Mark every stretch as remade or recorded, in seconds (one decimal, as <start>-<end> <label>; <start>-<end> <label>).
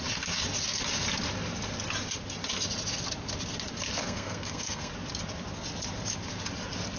0.0-4.0 recorded; 4.0-4.9 remade; 4.9-7.0 recorded